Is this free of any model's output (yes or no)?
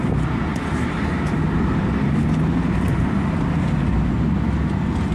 yes